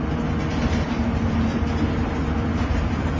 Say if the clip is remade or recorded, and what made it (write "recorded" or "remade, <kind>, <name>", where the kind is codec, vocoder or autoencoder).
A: recorded